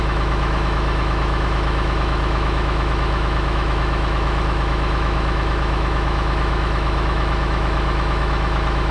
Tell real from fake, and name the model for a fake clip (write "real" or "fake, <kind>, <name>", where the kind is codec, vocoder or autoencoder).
fake, autoencoder, DAC-VAE